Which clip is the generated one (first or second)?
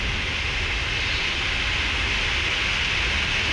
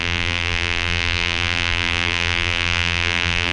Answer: second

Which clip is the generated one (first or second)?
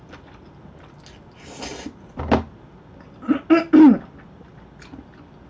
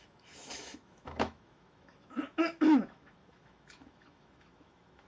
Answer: second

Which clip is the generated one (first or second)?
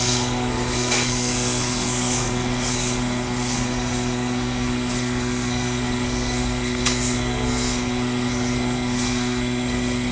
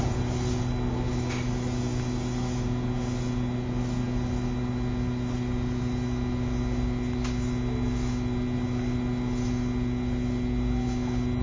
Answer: first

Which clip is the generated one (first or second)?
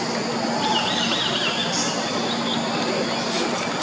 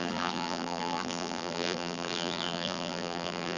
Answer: second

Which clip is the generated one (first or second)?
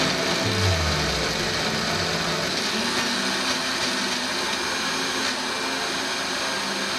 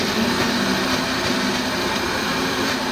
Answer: second